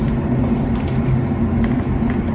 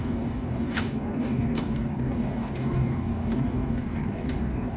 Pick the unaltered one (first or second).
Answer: first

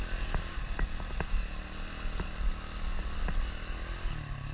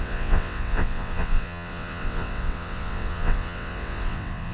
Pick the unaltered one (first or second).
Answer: first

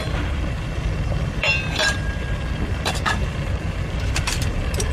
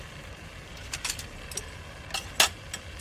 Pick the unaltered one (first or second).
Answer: second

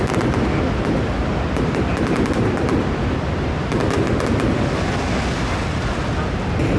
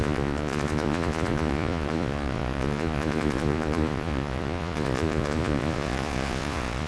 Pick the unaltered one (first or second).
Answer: first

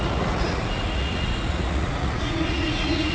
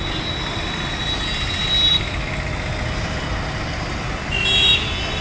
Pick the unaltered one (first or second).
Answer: second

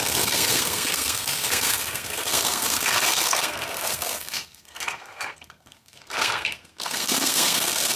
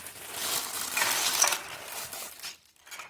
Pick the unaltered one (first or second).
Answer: second